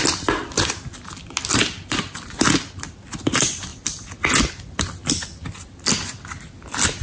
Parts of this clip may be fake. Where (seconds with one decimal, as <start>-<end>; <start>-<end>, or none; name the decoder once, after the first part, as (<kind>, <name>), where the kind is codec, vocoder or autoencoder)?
none